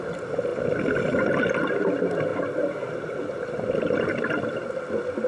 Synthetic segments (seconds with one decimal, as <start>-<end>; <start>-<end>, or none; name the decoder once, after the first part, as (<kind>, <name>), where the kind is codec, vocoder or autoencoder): none